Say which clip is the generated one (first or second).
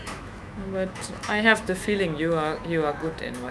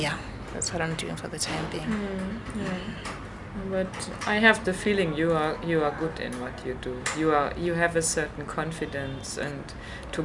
first